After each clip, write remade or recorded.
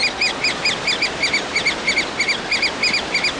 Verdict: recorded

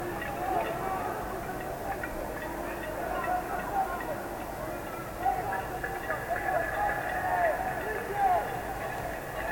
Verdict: recorded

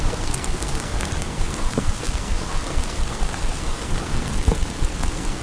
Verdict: remade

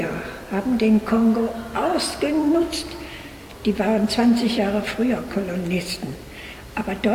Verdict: recorded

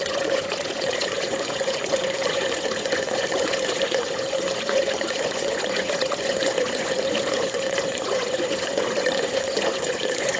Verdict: remade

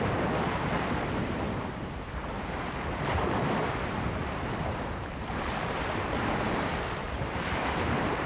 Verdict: remade